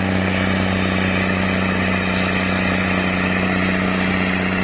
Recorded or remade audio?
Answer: recorded